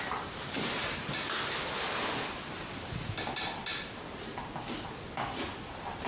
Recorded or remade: recorded